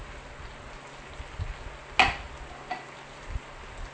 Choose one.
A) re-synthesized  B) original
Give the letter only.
B